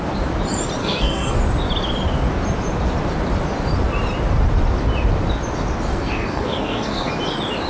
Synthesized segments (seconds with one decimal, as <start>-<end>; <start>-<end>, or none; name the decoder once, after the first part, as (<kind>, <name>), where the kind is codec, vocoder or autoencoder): 0.8-1.4 (codec, SNAC); 5.9-7.1